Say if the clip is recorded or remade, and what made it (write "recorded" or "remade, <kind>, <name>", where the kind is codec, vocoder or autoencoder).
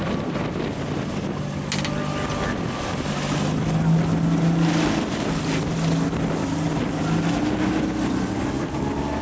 recorded